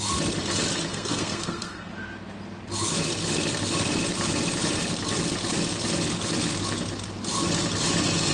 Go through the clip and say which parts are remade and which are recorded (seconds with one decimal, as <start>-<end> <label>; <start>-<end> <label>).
0.0-0.9 recorded; 0.9-1.9 remade; 1.9-8.3 recorded